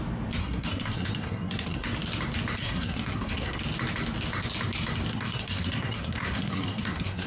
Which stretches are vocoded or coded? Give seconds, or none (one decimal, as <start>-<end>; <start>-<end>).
0.4-1.9; 2.6-3.6; 5.1-7.3